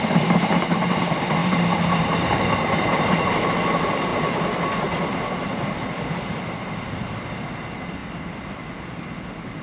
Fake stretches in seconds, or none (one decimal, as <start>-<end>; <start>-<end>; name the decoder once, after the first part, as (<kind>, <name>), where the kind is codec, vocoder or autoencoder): 1.4-3.3 (vocoder, BigVGAN v2)